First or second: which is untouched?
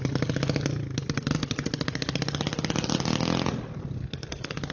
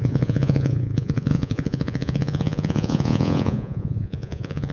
first